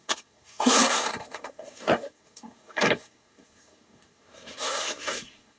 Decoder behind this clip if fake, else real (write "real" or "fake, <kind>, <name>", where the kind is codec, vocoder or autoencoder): fake, codec, SNAC